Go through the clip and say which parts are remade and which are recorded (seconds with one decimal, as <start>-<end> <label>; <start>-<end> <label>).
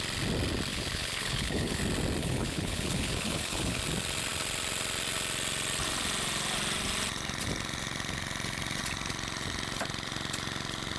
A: 0.0-0.7 recorded; 0.7-1.8 remade; 1.8-2.2 recorded; 2.2-3.8 remade; 3.8-11.0 recorded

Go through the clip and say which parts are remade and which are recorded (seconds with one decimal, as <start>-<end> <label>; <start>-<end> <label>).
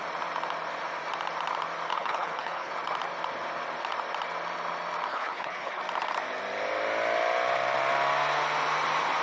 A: 0.0-1.9 recorded; 1.9-2.7 remade; 2.7-5.1 recorded; 5.1-5.8 remade; 5.8-9.2 recorded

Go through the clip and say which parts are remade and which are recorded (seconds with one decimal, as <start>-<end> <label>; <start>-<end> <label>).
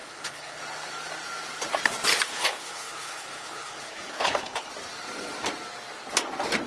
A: 0.0-0.6 remade; 0.6-2.1 recorded; 2.1-4.7 remade; 4.7-6.7 recorded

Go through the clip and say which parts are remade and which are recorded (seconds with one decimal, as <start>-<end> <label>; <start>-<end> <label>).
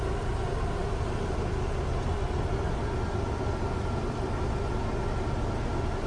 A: 0.0-6.1 recorded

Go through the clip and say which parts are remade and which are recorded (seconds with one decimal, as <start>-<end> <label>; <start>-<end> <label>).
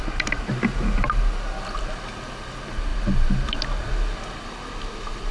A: 0.0-5.3 recorded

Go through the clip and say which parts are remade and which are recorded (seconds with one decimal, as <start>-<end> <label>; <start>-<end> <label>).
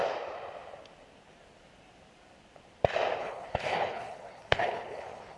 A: 0.0-3.2 recorded; 3.2-5.4 remade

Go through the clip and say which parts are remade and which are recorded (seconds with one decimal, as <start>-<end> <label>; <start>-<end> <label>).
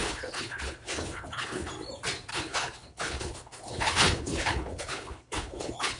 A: 0.0-1.7 remade; 1.7-2.3 recorded; 2.3-6.0 remade